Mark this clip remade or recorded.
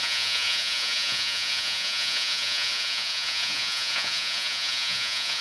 remade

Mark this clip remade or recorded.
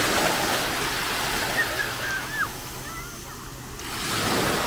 recorded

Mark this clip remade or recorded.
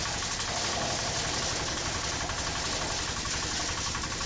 recorded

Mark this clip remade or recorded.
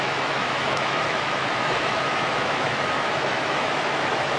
remade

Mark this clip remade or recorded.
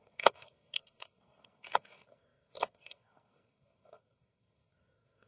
remade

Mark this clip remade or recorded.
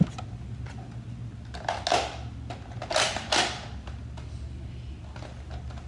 recorded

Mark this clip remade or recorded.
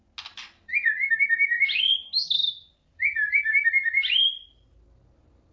recorded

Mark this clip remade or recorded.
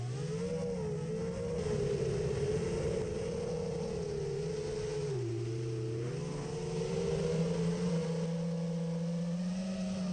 recorded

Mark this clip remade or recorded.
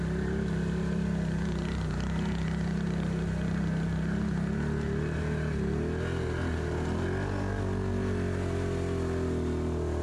recorded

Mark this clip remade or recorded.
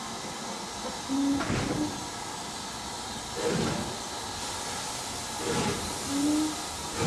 recorded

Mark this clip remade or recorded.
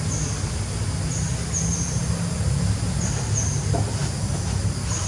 recorded